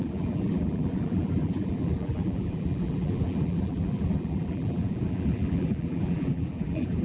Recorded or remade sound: remade